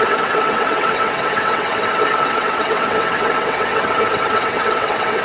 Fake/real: fake